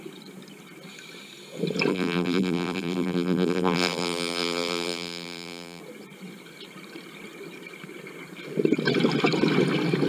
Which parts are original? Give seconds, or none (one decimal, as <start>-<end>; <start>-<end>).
0.0-1.9; 5.8-10.1